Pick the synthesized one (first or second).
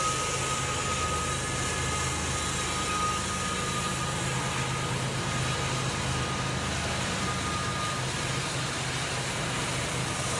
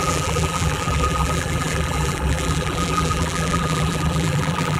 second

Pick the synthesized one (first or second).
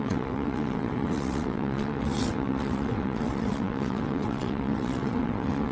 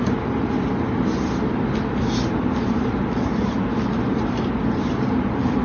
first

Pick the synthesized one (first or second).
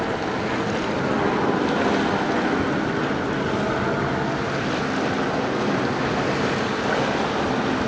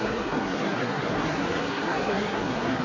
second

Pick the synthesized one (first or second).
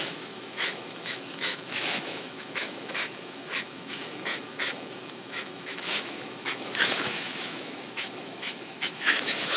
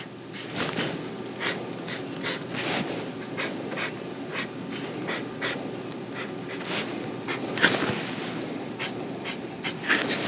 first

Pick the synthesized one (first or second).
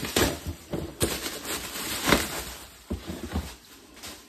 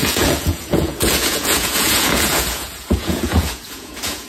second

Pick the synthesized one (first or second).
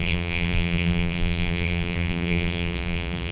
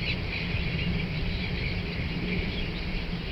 first